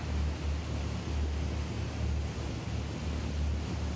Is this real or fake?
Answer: real